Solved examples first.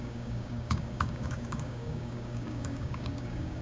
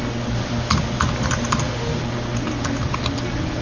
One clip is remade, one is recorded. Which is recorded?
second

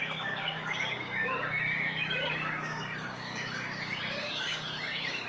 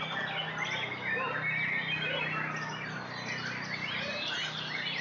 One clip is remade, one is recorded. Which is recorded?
second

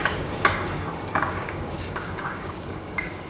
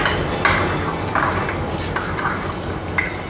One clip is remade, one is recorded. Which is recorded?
second